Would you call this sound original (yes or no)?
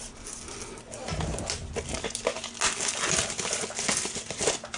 yes